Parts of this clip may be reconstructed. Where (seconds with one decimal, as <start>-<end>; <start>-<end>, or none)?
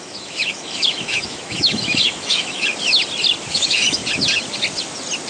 0.0-2.7; 3.5-4.0